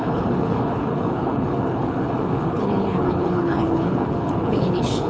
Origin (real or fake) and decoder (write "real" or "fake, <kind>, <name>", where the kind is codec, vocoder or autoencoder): fake, codec, HILCodec